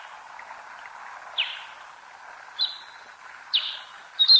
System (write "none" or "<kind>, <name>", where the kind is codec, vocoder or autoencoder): none